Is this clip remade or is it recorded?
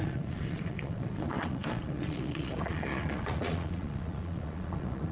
remade